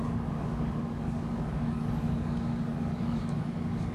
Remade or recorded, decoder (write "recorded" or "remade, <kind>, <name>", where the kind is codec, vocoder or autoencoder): remade, codec, DAC